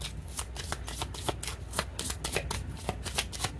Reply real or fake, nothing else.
real